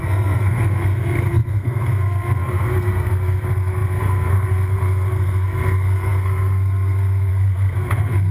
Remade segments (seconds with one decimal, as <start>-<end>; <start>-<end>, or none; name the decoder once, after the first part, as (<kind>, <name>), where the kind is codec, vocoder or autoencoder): 0.0-8.3 (codec, SNAC)

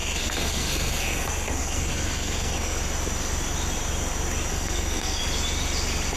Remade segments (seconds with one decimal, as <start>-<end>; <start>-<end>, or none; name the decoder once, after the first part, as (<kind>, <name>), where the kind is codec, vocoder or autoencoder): 0.0-2.8 (codec, SNAC); 4.5-5.2

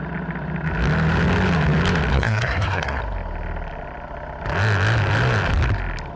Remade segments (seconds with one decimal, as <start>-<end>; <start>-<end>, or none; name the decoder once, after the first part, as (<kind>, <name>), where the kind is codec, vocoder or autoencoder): 2.1-3.0 (codec, SNAC)